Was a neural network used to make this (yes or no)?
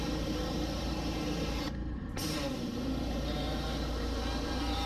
yes